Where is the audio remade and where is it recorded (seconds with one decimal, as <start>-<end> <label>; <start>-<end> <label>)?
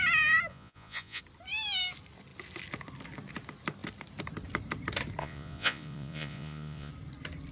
0.0-0.5 recorded; 0.5-1.2 remade; 1.2-5.2 recorded; 5.2-6.9 remade; 6.9-7.5 recorded